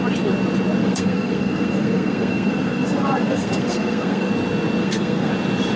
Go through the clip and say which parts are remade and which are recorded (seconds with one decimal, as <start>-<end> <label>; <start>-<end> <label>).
0.0-0.8 recorded; 0.8-4.3 remade; 4.3-4.8 recorded; 4.8-5.3 remade; 5.3-5.8 recorded